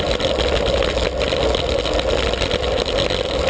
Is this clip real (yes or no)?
yes